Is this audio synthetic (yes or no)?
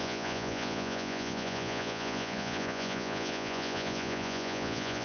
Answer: yes